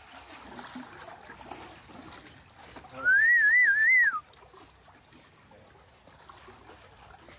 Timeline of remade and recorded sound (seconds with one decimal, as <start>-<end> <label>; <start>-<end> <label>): 0.0-7.4 recorded